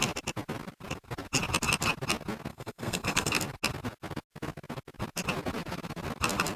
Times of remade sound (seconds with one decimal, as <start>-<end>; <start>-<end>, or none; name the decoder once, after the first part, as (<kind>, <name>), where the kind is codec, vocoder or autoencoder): 2.5-3.4 (codec, SNAC)